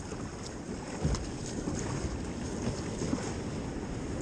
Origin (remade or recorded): recorded